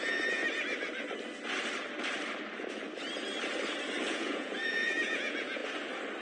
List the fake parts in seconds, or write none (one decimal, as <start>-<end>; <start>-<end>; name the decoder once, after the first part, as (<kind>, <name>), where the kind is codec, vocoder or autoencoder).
0.0-0.4 (vocoder, Vocos); 4.1-5.6